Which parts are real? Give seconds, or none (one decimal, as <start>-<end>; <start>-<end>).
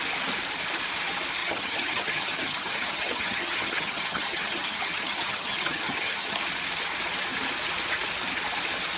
0.0-1.4; 6.4-9.0